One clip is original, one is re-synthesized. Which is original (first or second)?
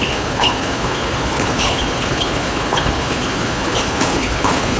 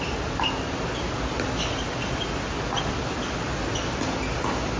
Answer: second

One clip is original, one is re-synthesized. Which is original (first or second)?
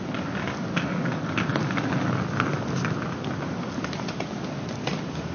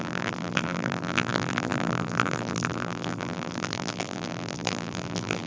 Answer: first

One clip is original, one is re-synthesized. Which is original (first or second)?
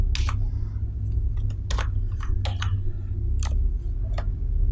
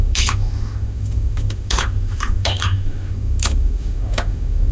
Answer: first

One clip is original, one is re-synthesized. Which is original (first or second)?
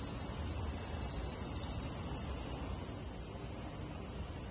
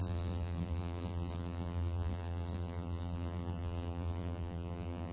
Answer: first